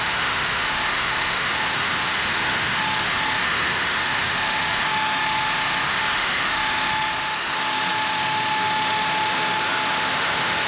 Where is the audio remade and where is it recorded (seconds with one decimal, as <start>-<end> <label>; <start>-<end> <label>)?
0.0-10.7 remade